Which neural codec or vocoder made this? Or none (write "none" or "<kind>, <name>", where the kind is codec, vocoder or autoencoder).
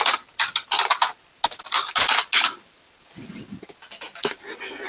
none